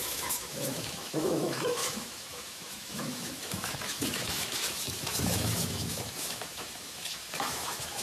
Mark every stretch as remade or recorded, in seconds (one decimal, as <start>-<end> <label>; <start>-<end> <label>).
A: 0.0-8.0 remade